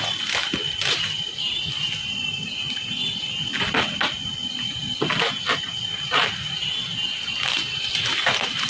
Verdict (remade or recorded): recorded